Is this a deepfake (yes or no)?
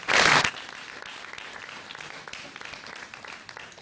no